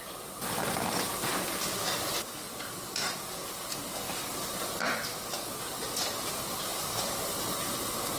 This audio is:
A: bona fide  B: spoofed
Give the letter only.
A